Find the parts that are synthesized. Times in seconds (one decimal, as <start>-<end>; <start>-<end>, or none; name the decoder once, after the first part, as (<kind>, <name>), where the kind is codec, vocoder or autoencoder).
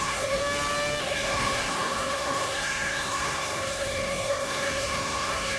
0.0-0.4 (codec, SNAC); 1.0-5.6